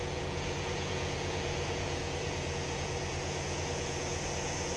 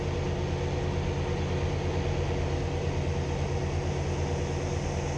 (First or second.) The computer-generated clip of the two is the first